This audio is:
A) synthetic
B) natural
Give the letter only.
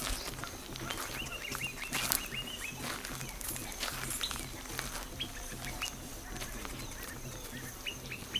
B